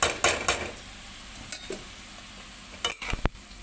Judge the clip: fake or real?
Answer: real